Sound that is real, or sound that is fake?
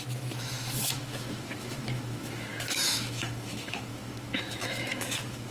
fake